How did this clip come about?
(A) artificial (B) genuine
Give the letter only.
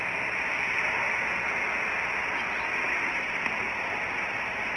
B